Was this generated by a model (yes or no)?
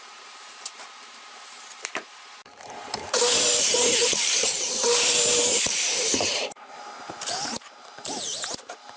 yes